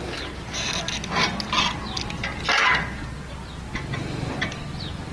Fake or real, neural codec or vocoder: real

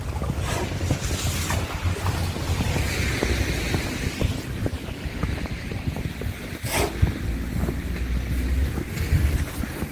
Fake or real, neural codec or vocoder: real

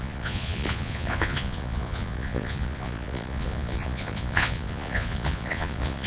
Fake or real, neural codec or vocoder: fake, vocoder, Vocos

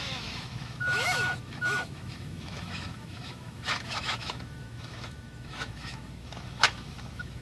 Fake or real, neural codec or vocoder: fake, autoencoder, DAC-VAE